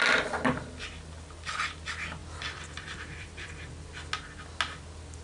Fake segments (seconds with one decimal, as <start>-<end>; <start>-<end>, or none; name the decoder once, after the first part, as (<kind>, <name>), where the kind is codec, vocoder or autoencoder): 2.2-3.5 (vocoder, BigVGAN v2)